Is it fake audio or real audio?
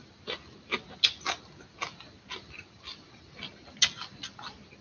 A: real